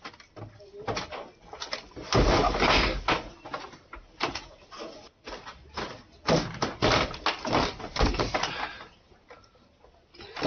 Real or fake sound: real